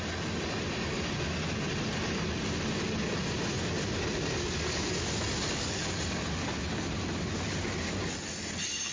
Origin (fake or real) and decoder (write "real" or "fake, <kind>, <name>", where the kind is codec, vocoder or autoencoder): real